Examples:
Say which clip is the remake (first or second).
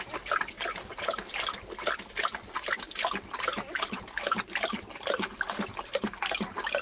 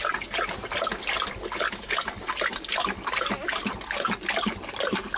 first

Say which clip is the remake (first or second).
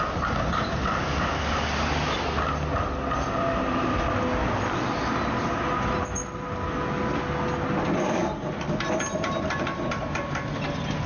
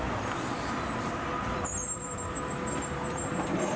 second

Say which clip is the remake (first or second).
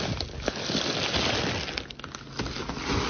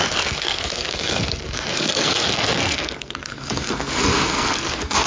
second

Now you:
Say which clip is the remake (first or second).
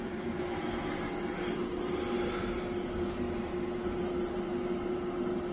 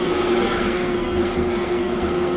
second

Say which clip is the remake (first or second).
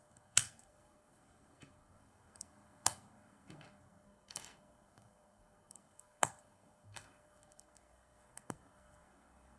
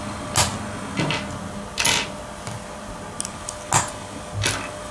first